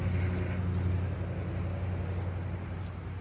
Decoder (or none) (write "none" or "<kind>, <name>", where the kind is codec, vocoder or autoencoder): none